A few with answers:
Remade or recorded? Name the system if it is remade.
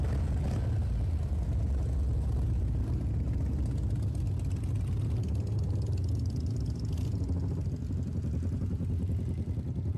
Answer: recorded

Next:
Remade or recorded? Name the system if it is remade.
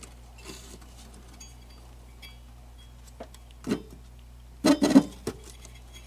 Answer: recorded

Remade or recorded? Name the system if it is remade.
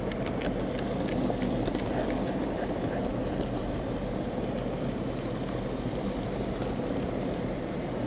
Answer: remade, vocoder, BigVGAN v2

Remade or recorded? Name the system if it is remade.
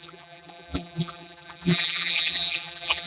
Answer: remade, vocoder, BigVGAN v2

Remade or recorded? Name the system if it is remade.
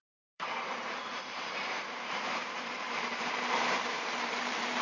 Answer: remade, vocoder, BigVGAN v2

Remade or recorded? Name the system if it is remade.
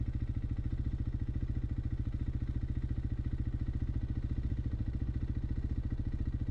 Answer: recorded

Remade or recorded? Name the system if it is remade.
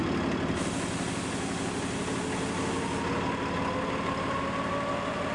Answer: recorded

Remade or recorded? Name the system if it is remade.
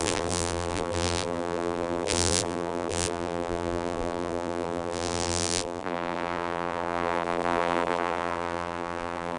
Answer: remade, vocoder, BigVGAN v2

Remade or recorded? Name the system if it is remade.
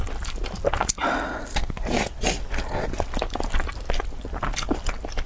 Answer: recorded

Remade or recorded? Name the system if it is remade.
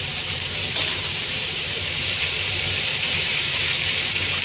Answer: remade, vocoder, BigVGAN v2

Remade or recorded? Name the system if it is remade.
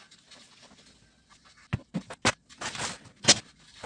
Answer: recorded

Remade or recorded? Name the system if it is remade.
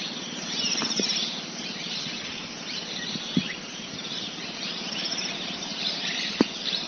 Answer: remade, vocoder, BigVGAN v2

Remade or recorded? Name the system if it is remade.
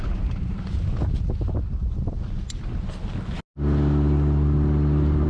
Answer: recorded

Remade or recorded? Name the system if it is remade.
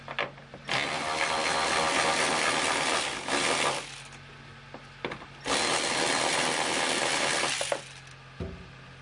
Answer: recorded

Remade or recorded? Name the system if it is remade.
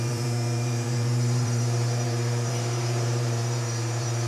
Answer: remade, vocoder, BigVGAN v2